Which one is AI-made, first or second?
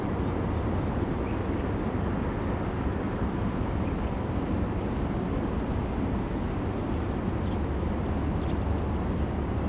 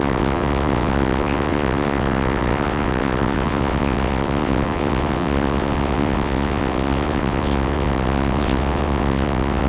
second